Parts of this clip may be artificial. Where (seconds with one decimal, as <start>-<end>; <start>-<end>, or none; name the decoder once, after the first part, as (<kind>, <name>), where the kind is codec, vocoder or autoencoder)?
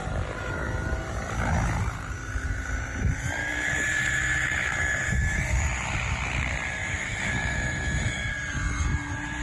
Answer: 3.4-5.4 (autoencoder, DAC-VAE); 6.8-8.3